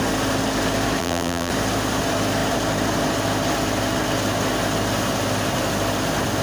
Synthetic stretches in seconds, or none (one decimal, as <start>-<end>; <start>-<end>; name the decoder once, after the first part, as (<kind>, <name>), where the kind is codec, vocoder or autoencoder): 1.0-1.5 (vocoder, BigVGAN v2)